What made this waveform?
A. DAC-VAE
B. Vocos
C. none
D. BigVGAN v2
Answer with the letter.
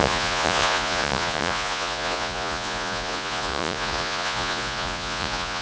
B